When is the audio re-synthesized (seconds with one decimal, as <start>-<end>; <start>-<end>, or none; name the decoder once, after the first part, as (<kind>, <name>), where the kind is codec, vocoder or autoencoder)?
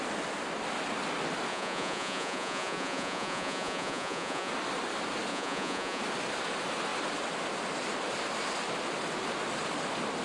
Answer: 1.5-4.5 (vocoder, Vocos); 5.3-6.0